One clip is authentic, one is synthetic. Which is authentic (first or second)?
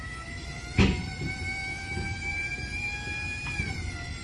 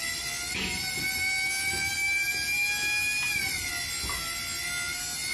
second